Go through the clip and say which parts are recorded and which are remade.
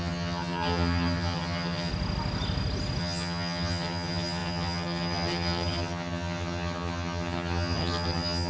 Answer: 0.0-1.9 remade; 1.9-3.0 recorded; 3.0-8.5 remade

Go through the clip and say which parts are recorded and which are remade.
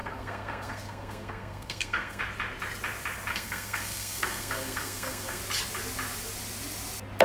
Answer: 0.0-2.2 remade; 2.2-3.3 recorded; 3.3-5.4 remade; 5.4-7.2 recorded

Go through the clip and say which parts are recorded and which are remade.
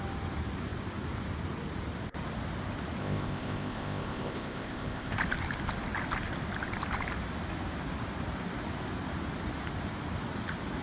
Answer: 0.0-3.0 recorded; 3.0-5.2 remade; 5.2-10.8 recorded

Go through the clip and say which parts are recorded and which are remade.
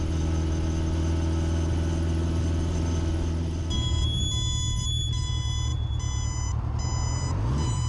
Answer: 0.0-7.9 recorded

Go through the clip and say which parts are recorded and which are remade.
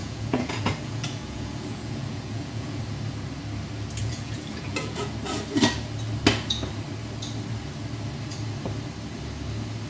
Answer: 0.0-2.8 remade; 2.8-4.0 recorded; 4.0-5.1 remade; 5.1-9.9 recorded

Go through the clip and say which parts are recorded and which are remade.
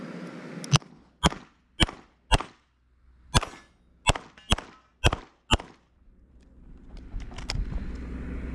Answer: 0.0-8.5 recorded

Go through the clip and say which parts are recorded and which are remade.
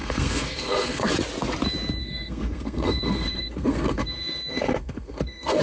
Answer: 0.0-1.1 remade; 1.1-2.0 recorded; 2.0-5.6 remade